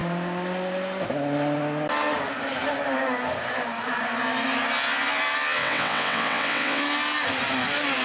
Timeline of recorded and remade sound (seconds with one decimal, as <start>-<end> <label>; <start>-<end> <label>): 0.0-5.6 recorded; 5.6-6.8 remade; 6.8-8.0 recorded